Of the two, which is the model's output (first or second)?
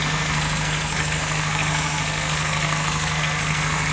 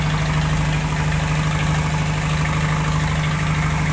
first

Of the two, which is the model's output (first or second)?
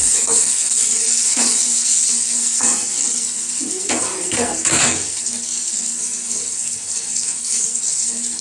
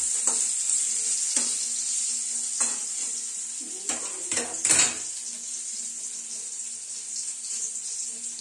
first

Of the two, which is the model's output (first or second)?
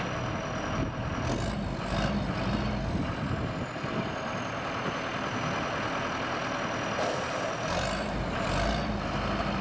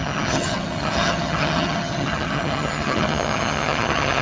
second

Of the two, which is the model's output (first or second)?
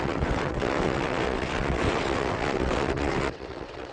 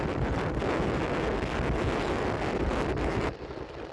first